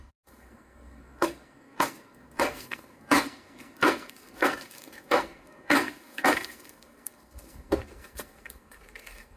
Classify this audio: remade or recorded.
remade